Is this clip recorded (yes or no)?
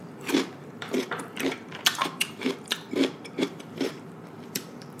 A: no